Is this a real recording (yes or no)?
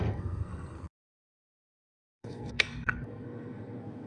no